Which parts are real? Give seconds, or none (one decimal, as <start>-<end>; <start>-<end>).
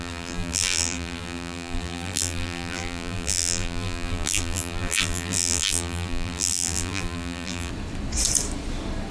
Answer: 7.7-9.1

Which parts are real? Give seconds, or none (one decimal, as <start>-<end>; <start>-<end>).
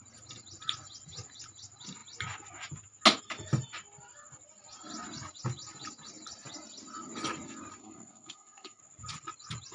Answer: 0.0-7.8; 8.8-9.7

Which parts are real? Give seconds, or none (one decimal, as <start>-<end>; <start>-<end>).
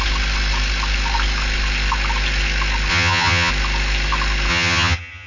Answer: 0.0-2.9; 3.5-4.5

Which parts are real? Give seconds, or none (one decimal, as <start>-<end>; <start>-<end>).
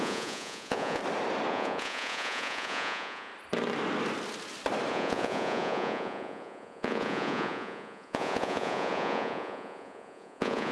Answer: 1.0-1.5; 3.3-4.9